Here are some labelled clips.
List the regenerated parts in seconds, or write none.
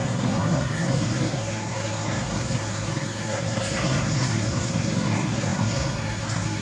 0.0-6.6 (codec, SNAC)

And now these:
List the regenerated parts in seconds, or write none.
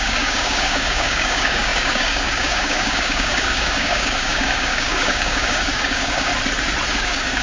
0.0-6.3 (codec, DAC); 6.9-7.4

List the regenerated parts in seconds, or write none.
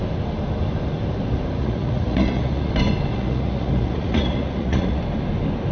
1.6-2.7 (vocoder, Vocos); 3.1-5.0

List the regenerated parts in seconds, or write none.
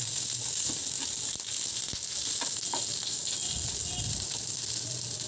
none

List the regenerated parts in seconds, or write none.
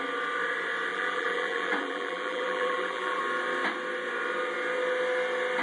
0.9-3.2 (vocoder, BigVGAN v2)